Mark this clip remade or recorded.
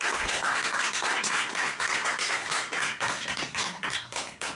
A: remade